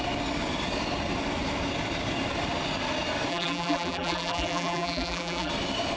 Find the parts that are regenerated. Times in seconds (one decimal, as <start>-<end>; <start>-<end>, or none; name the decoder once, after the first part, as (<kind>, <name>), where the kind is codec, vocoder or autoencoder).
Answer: 3.3-5.5 (vocoder, BigVGAN v2)